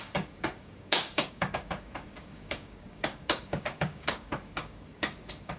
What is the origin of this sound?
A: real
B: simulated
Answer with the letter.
B